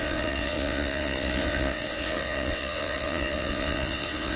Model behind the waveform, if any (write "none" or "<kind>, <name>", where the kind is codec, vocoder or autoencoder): vocoder, WaveNeXt